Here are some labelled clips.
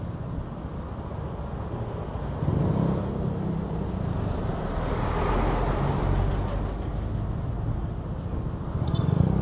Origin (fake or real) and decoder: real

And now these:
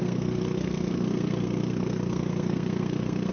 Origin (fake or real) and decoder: fake, codec, SNAC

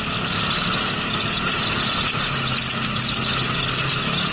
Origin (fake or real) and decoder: real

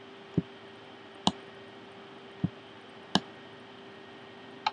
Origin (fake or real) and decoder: real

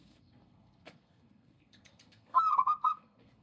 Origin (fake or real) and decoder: fake, codec, SNAC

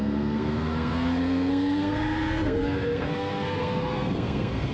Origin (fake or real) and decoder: fake, codec, SNAC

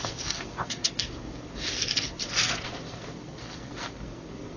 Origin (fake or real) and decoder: fake, codec, SNAC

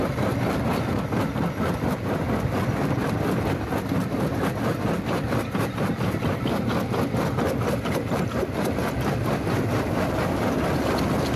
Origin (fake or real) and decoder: real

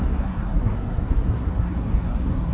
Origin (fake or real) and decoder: fake, codec, SNAC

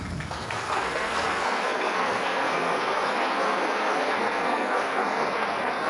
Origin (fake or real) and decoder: fake, codec, SNAC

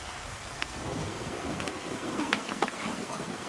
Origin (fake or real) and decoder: fake, codec, SNAC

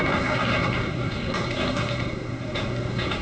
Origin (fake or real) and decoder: fake, codec, SNAC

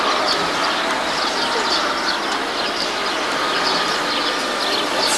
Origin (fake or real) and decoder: real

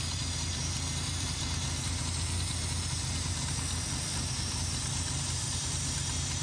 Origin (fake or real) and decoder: real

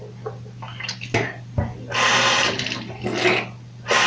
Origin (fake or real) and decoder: real